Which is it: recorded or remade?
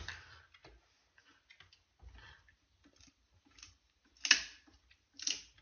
recorded